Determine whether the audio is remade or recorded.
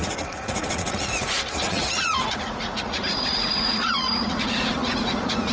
remade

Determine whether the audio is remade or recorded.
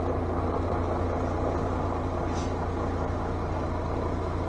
recorded